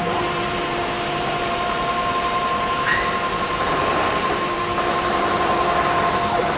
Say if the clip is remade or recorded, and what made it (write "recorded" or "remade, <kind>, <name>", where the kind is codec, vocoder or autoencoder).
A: remade, vocoder, BigVGAN v2